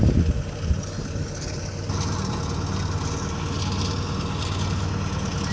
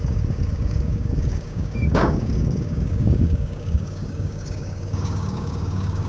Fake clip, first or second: second